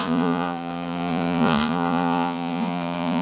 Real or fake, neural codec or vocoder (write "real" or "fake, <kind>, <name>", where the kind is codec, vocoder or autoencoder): fake, vocoder, Vocos